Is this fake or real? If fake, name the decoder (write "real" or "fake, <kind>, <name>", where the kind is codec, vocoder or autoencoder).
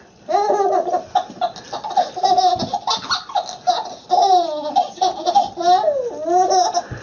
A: real